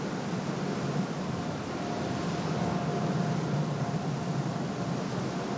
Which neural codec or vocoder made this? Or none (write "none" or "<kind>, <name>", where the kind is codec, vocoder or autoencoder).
none